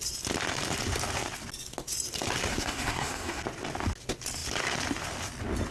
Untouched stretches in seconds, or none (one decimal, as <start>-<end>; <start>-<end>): 0.0-2.5; 3.4-5.7